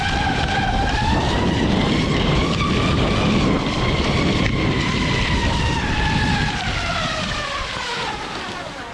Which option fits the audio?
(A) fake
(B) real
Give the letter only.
A